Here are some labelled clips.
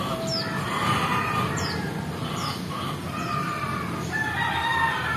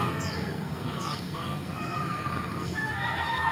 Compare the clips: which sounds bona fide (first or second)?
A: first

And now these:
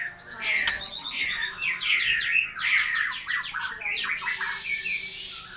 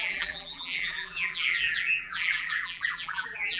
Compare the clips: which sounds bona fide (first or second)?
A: first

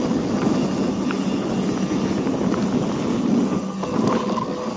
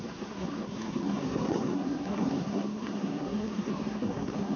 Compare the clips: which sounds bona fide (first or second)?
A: first